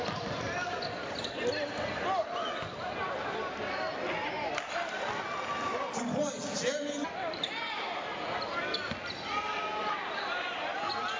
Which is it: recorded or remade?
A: recorded